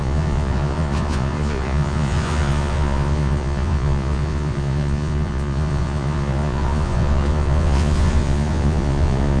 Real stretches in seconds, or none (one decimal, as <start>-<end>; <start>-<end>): none